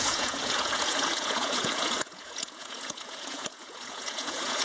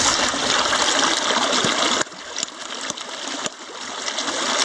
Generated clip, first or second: first